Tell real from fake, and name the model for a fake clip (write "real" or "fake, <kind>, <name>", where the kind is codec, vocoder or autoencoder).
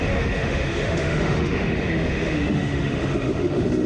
fake, autoencoder, DAC-VAE